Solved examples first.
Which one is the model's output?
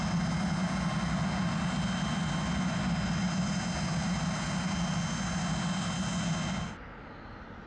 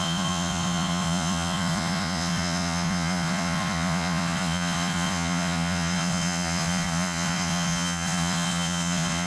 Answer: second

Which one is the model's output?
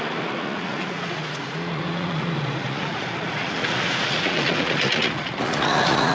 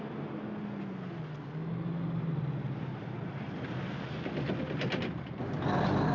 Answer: first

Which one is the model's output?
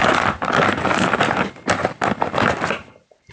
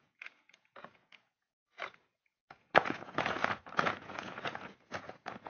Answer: second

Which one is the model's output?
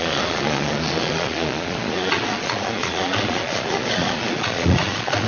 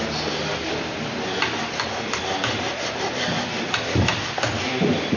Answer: first